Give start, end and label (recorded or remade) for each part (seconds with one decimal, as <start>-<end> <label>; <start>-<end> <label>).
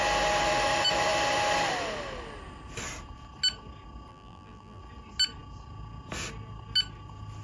0.0-4.1 recorded; 4.1-4.8 remade; 4.8-7.4 recorded